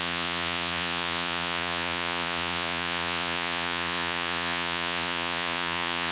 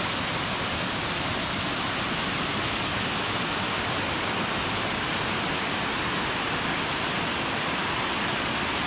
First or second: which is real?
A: second